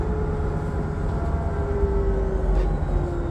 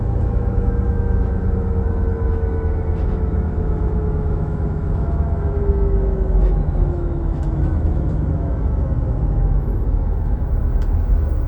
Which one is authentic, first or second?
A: first